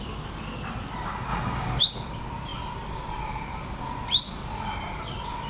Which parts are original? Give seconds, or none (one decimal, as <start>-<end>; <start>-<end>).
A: 2.5-3.4